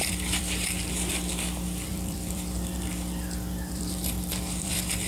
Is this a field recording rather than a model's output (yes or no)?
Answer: no